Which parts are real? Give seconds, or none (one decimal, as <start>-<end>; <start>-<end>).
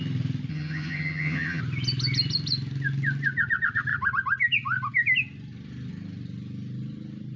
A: 0.0-0.5; 1.6-7.4